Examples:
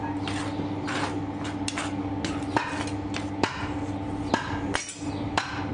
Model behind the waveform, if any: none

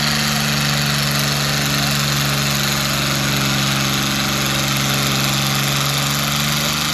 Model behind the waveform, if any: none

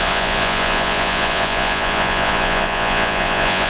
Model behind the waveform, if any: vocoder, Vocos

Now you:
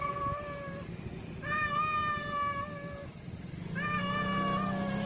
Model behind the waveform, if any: none